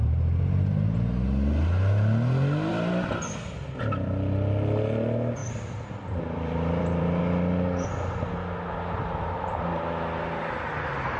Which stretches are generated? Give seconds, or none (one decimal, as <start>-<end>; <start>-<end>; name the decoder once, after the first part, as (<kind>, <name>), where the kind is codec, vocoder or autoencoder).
2.7-3.5 (vocoder, BigVGAN v2); 5.4-7.2